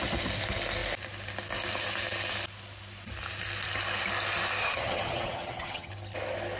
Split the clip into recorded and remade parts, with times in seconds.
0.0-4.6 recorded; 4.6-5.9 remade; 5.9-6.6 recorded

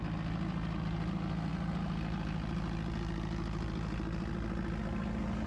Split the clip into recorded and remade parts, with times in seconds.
0.0-5.5 recorded

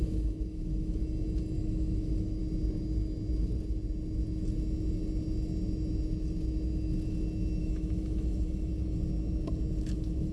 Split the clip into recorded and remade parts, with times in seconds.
0.0-1.0 remade; 1.0-1.6 recorded; 1.6-2.4 remade; 2.4-7.6 recorded; 7.6-8.7 remade; 8.7-9.8 recorded; 9.8-10.3 remade

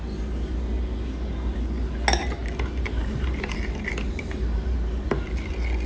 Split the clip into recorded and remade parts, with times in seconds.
0.0-2.4 recorded; 2.4-5.5 remade; 5.5-5.9 recorded